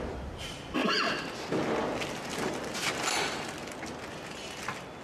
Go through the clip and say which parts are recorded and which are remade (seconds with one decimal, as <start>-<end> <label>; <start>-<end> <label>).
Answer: 0.0-5.0 recorded